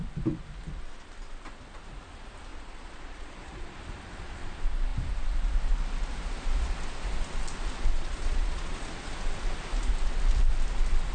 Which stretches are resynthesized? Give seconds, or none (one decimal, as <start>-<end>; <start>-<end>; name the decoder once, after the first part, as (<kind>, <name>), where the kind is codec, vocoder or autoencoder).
2.5-3.8 (vocoder, Vocos); 7.9-9.1

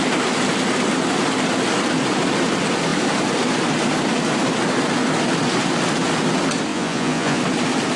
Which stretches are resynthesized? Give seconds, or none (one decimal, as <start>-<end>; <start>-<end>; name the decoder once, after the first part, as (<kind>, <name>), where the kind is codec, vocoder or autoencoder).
6.7-7.4 (vocoder, Vocos)